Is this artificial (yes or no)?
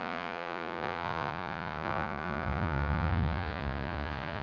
yes